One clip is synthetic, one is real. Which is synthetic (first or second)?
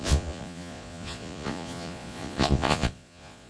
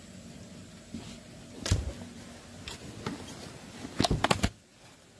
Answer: first